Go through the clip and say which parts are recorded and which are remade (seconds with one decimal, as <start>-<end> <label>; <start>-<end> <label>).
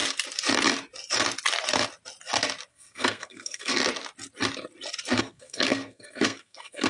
0.0-2.7 recorded; 2.7-3.8 remade; 3.8-5.2 recorded; 5.2-6.9 remade